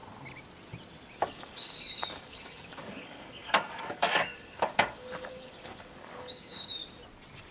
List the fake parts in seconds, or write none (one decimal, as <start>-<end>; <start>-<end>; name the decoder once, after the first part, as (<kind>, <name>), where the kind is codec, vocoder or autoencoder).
1.2-6.8 (codec, DAC)